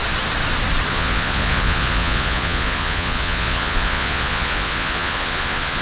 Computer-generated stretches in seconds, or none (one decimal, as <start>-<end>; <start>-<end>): 0.9-5.8